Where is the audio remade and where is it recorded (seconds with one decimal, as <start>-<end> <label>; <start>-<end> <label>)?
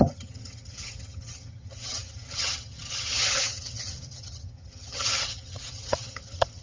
0.0-6.6 remade